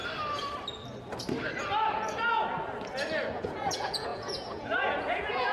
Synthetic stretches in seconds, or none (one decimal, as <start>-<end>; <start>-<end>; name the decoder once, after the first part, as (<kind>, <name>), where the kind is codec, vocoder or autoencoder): 3.3-5.5 (vocoder, Vocos)